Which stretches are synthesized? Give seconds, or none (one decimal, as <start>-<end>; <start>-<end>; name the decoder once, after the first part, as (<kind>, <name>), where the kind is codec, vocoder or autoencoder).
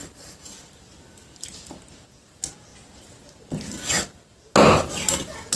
none